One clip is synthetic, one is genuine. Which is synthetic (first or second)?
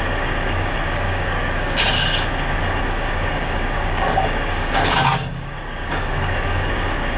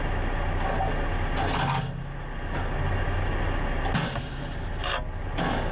first